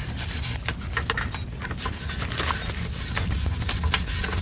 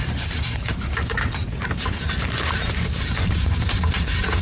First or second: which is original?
first